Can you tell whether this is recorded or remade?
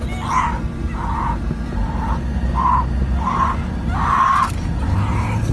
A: recorded